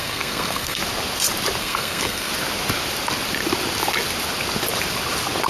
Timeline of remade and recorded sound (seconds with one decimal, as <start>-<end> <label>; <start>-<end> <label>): 0.0-0.8 remade; 0.8-1.6 recorded; 1.6-2.3 remade; 2.3-5.5 recorded